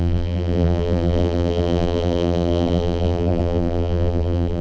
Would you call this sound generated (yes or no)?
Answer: yes